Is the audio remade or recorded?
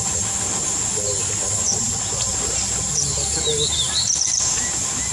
recorded